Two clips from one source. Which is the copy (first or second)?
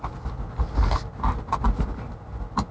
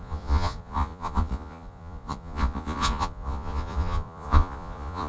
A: second